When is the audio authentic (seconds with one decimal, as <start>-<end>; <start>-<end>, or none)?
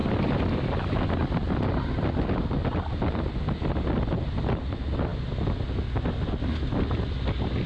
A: 0.0-7.7